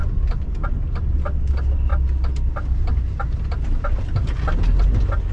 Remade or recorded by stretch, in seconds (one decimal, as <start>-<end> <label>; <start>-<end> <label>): 0.0-5.3 recorded

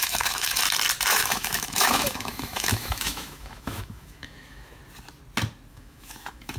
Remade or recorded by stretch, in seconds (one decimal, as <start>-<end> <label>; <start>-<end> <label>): 0.0-0.6 remade; 0.6-1.1 recorded; 1.1-4.8 remade; 4.8-5.7 recorded; 5.7-6.6 remade

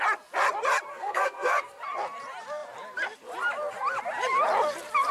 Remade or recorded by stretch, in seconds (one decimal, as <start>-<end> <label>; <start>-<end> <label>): 0.0-0.9 recorded; 0.9-1.8 remade; 1.8-5.1 recorded